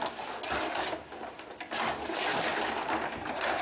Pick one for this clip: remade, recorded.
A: recorded